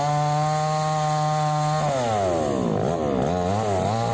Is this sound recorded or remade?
recorded